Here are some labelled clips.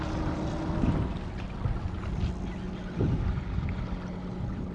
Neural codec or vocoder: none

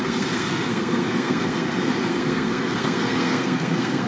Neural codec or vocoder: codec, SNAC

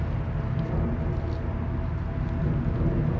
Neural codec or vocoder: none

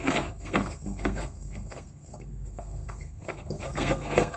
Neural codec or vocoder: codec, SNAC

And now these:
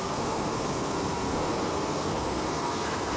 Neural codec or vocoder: codec, SNAC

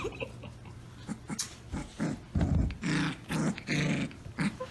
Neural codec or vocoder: none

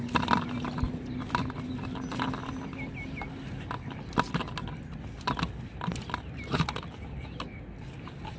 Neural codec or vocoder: none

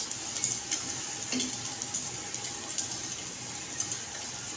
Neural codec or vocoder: none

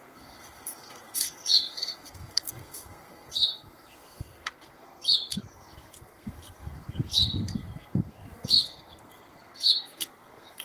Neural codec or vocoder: codec, SNAC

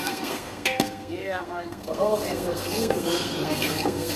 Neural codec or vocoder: codec, SNAC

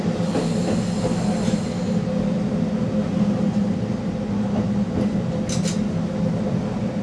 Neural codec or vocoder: none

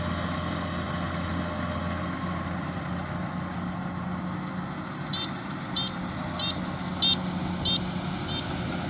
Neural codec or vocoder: none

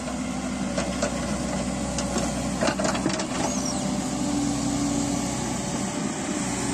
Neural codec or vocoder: none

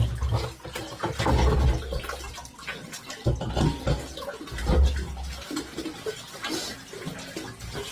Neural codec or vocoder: none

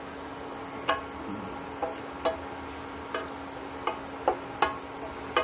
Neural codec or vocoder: none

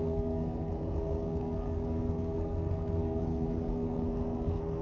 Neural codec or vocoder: codec, SNAC